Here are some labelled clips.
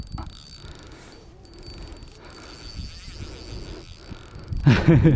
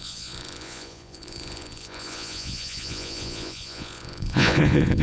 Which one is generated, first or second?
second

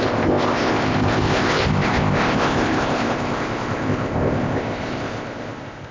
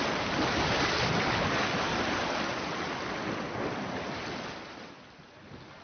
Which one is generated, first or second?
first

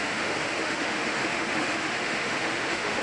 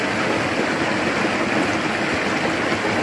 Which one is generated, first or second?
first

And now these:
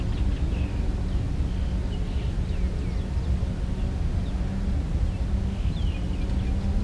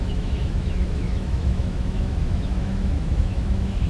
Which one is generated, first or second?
second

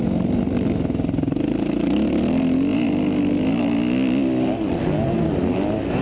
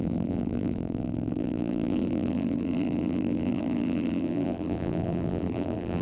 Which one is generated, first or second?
second